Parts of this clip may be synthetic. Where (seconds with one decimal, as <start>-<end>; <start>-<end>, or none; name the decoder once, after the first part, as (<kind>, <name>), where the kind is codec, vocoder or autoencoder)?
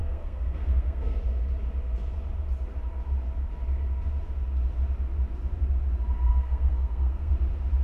0.0-1.2 (codec, SNAC); 6.3-7.3